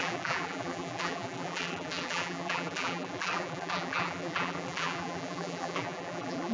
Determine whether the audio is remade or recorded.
remade